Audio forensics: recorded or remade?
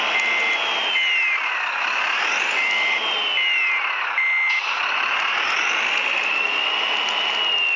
recorded